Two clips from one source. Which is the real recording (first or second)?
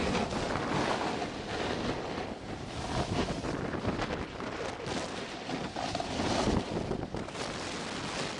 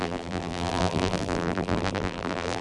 first